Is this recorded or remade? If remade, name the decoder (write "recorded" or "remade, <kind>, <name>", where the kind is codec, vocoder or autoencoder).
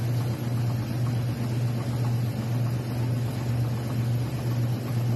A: recorded